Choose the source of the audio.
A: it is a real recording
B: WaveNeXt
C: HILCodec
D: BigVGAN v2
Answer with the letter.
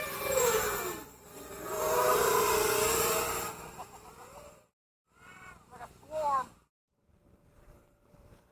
D